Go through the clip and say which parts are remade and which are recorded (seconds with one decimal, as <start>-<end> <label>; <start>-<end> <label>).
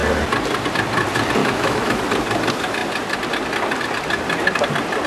0.0-1.4 recorded; 1.4-2.0 remade; 2.0-5.1 recorded